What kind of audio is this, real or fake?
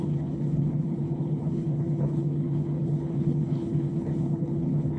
fake